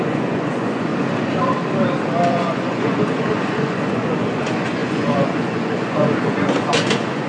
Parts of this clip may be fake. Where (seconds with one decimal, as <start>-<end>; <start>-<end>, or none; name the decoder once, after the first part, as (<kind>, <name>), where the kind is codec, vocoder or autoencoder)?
0.0-0.9 (vocoder, Vocos); 2.3-7.3